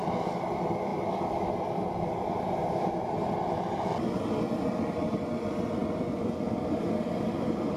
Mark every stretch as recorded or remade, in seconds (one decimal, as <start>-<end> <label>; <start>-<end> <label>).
0.0-2.6 recorded; 2.6-3.4 remade; 3.4-5.8 recorded; 5.8-7.8 remade